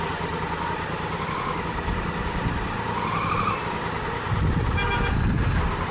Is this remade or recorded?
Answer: recorded